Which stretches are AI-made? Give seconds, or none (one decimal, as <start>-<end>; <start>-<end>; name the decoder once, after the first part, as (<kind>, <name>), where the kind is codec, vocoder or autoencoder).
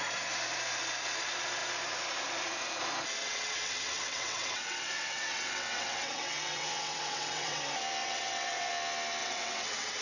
3.2-7.6 (vocoder, WaveNeXt); 8.0-8.7; 9.2-10.0